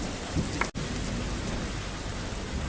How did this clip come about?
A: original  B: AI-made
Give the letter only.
A